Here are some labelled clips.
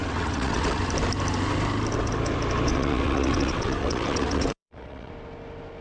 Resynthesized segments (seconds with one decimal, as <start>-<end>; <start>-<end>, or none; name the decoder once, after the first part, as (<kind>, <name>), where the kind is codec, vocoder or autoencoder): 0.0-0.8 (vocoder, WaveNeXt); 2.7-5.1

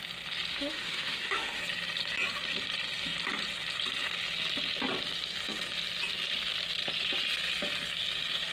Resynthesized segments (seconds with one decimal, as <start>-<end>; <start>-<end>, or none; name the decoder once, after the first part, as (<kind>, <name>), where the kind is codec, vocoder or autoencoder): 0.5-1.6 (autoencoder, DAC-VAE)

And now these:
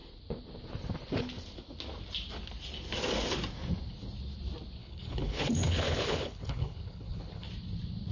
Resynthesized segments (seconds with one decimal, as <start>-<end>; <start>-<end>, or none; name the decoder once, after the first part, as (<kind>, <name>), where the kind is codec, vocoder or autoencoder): 4.8-7.5 (codec, HILCodec)

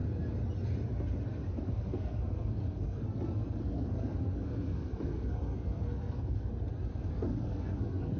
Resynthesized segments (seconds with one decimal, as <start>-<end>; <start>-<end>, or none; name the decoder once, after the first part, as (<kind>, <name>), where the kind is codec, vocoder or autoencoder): 1.6-6.5 (codec, SNAC); 7.1-8.2

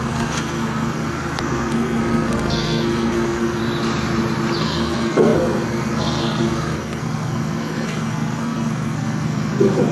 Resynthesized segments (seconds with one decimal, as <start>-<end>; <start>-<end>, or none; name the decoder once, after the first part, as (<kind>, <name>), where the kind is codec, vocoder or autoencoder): 0.0-3.6 (codec, SNAC); 4.6-9.9